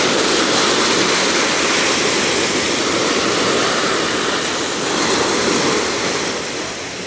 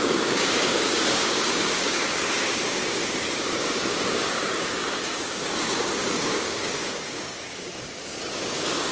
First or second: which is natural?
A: first